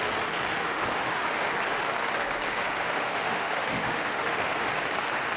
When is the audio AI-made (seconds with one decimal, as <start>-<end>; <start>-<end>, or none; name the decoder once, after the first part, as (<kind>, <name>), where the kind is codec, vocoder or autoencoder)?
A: 0.6-1.5 (autoencoder, DAC-VAE); 2.5-4.7